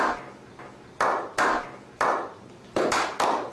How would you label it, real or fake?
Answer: real